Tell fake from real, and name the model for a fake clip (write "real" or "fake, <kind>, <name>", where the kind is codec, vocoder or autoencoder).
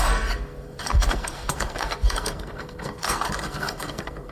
fake, codec, SNAC